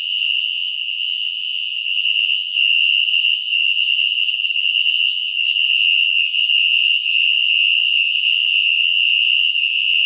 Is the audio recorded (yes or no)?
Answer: no